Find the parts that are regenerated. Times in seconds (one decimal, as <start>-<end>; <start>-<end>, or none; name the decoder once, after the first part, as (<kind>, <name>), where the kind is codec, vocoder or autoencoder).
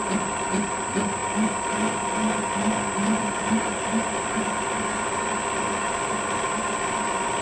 none